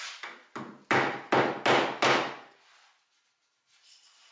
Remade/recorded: recorded